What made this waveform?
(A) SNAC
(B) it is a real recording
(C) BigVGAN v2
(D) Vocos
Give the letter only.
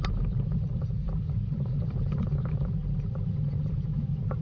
C